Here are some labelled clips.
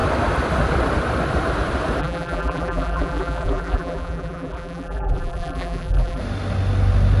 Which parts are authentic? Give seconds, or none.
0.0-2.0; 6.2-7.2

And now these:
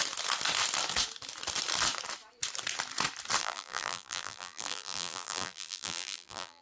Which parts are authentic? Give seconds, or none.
0.0-3.4

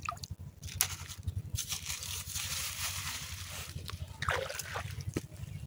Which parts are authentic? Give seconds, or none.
0.0-1.6; 4.1-5.7

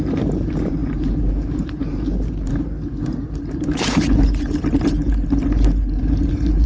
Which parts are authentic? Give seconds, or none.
none